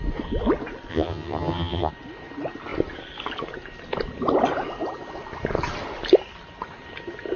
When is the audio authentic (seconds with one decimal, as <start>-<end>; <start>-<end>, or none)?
0.0-0.9; 1.9-7.4